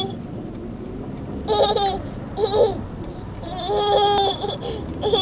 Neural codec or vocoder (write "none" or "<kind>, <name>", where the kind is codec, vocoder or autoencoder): none